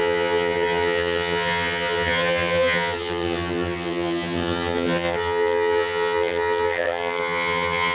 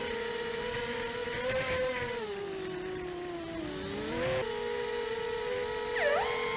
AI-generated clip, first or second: first